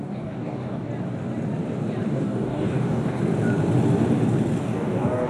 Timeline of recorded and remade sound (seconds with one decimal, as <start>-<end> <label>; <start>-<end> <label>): 0.0-0.9 remade; 0.9-2.1 recorded; 2.1-3.2 remade; 3.2-4.6 recorded; 4.6-5.3 remade